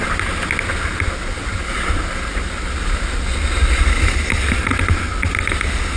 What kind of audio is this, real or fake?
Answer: real